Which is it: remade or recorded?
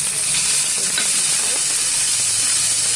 recorded